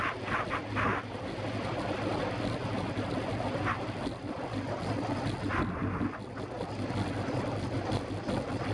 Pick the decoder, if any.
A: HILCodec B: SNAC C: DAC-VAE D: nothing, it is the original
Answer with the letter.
D